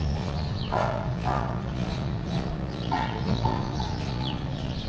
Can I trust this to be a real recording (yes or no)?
no